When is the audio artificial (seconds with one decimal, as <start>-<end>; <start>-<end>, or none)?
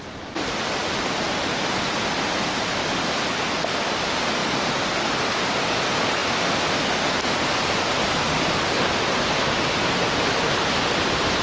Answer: none